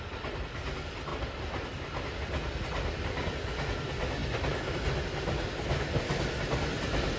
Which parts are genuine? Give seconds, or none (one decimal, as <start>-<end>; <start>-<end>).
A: 0.0-7.2